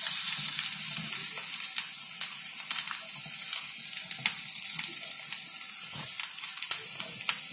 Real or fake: real